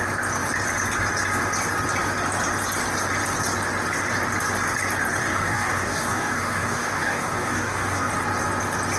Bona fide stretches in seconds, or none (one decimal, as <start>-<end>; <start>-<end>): 0.0-5.2; 8.1-9.0